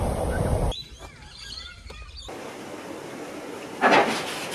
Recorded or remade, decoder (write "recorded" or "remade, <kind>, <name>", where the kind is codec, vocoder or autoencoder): recorded